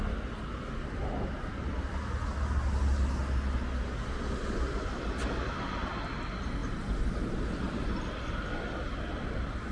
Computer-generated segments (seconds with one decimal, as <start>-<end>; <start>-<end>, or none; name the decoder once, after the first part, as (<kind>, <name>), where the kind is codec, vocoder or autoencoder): none